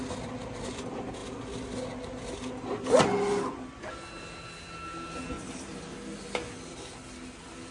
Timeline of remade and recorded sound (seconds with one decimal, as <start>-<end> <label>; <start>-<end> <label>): 0.0-7.7 recorded